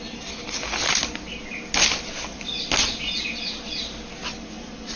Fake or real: real